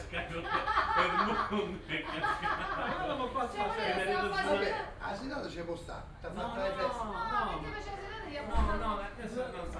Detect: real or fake real